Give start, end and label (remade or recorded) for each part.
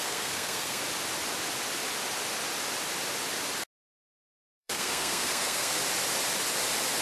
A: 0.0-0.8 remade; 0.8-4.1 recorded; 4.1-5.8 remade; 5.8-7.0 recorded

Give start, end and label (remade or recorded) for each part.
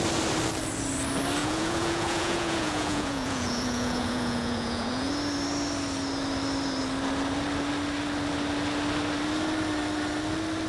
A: 0.0-1.4 recorded; 1.4-5.1 remade; 5.1-10.7 recorded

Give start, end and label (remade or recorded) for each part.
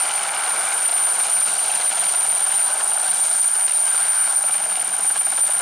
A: 0.0-5.6 recorded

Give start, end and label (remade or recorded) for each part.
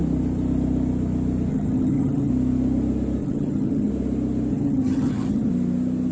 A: 0.0-1.5 recorded; 1.5-2.3 remade; 2.3-3.2 recorded; 3.2-3.9 remade; 3.9-4.5 recorded; 4.5-5.5 remade; 5.5-6.1 recorded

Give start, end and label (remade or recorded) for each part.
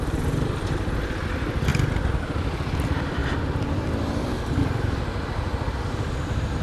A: 0.0-1.7 remade; 1.7-2.4 recorded; 2.4-6.6 remade